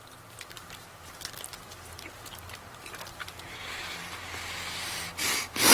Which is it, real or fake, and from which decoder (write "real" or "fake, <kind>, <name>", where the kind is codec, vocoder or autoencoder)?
real